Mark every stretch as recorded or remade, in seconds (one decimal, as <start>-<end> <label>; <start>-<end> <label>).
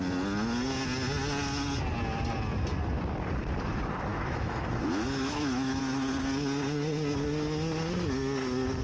0.0-4.1 recorded; 4.1-5.8 remade; 5.8-8.8 recorded